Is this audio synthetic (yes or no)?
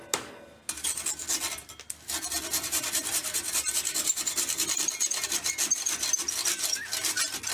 no